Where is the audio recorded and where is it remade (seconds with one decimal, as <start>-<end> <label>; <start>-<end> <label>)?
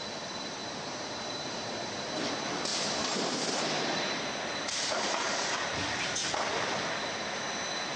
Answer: 0.0-0.6 recorded; 0.6-2.2 remade; 2.2-2.7 recorded; 2.7-5.5 remade; 5.5-8.0 recorded